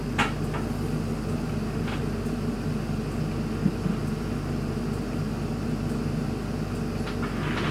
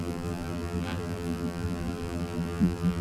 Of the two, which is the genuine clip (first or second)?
first